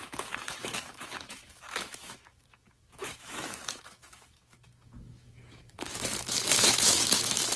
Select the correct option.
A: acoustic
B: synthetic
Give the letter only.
B